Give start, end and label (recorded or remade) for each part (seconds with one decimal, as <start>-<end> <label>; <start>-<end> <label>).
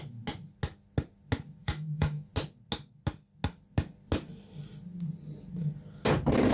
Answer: 0.0-1.6 recorded; 1.6-2.3 remade; 2.3-6.5 recorded